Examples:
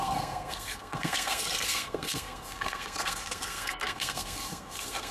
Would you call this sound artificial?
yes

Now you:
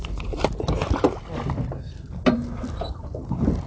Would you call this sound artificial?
no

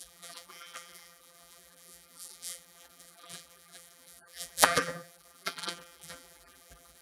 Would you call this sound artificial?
yes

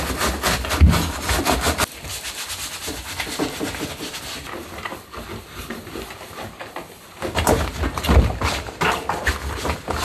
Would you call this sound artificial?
no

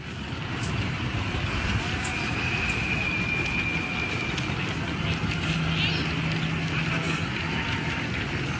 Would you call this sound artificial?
no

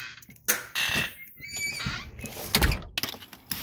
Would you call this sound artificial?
no